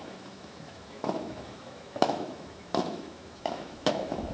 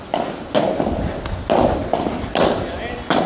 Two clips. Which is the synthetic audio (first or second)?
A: first